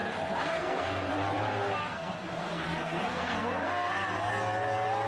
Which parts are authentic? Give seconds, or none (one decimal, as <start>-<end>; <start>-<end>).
1.1-1.8; 4.3-5.1